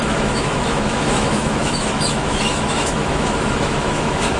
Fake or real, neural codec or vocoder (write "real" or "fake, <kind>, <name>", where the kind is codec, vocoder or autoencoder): fake, autoencoder, DAC-VAE